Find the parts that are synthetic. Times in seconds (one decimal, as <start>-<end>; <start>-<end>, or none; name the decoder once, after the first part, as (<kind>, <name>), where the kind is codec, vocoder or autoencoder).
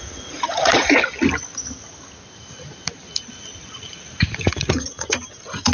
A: 0.0-1.0 (vocoder, Vocos); 4.4-5.7